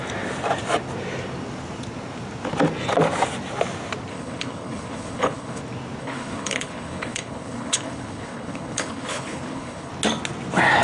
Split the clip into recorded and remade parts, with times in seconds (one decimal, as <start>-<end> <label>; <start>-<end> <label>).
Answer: 0.0-4.1 recorded; 4.1-5.6 remade; 5.6-6.0 recorded; 6.0-9.9 remade; 9.9-10.8 recorded